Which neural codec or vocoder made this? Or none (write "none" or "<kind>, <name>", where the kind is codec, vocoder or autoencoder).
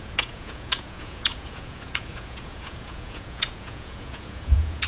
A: vocoder, Vocos